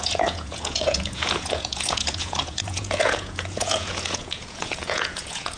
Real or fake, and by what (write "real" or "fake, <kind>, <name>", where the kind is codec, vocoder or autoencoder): fake, vocoder, Vocos